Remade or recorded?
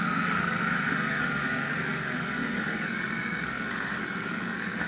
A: remade